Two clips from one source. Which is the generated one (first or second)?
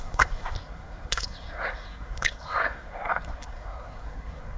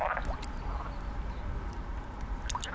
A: first